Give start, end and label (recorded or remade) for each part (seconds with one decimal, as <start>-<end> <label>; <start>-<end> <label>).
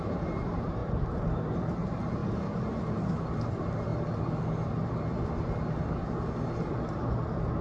0.0-3.9 remade; 3.9-7.6 recorded